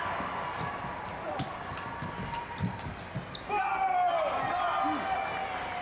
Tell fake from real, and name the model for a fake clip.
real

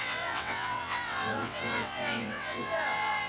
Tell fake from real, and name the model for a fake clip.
fake, vocoder, WaveNeXt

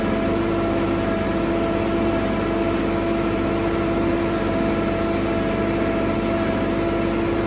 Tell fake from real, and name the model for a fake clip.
real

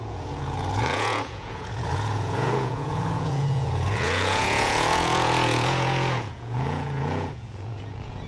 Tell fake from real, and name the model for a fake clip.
fake, vocoder, Vocos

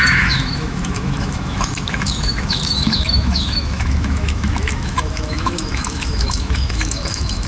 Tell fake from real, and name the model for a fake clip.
fake, autoencoder, DAC-VAE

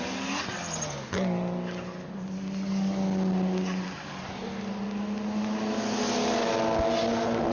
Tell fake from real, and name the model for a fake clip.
real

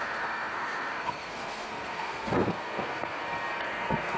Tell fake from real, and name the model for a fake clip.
fake, codec, SNAC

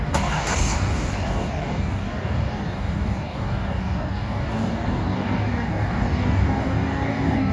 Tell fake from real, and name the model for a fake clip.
fake, codec, DAC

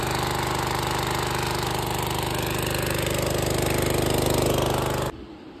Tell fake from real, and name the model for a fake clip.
real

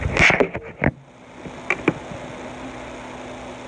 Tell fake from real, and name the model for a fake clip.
real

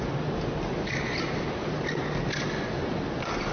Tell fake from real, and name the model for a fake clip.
real